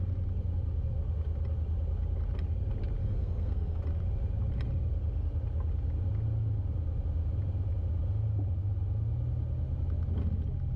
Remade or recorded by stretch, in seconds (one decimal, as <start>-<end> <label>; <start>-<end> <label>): 0.0-3.0 recorded; 3.0-3.8 remade; 3.8-10.8 recorded